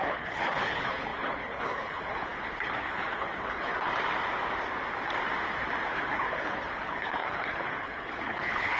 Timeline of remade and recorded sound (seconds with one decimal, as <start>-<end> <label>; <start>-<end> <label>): 0.0-3.9 remade; 3.9-5.9 recorded; 5.9-8.8 remade